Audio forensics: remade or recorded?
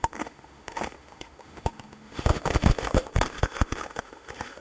remade